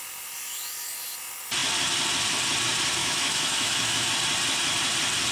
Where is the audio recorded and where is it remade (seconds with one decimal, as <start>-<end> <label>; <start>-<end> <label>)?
0.0-3.0 recorded; 3.0-4.1 remade; 4.1-5.3 recorded